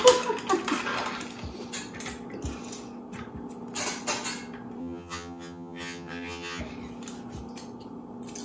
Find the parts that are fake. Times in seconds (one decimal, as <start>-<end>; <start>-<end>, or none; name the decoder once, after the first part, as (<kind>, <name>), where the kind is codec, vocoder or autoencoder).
4.8-6.6 (vocoder, HiFi-GAN)

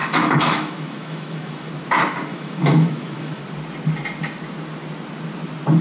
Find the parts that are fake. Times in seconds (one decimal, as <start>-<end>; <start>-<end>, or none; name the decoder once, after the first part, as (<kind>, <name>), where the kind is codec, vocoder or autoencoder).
0.0-1.7 (autoencoder, DAC-VAE); 2.3-3.4